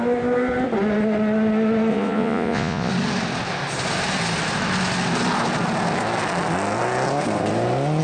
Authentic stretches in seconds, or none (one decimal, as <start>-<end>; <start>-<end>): 0.0-1.9; 2.9-8.0